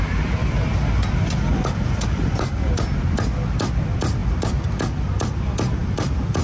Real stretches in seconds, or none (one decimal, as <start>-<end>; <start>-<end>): 0.0-5.8